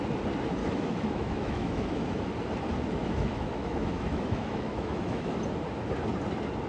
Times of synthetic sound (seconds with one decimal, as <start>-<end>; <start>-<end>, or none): 0.6-2.3; 3.0-5.4